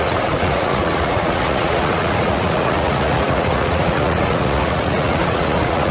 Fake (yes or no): yes